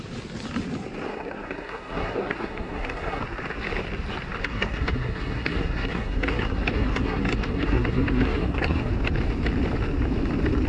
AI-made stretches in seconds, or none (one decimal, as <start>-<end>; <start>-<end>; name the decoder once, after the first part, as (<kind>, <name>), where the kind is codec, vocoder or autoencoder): 1.1-3.2 (codec, SNAC); 4.4-8.9